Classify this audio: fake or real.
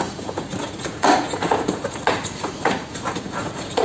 fake